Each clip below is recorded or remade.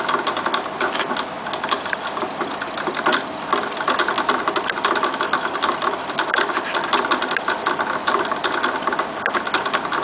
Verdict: recorded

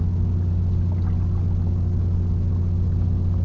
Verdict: recorded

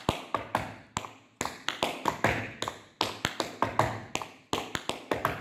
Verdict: recorded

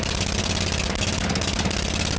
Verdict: recorded